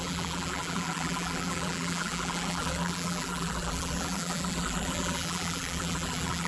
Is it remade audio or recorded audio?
remade